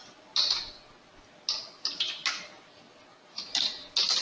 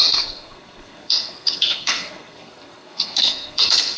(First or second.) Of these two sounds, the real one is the first